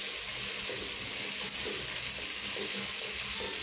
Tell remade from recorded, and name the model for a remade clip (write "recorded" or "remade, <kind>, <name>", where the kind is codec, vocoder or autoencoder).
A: recorded